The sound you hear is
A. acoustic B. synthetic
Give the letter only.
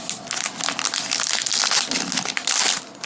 A